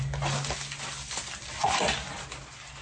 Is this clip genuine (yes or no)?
yes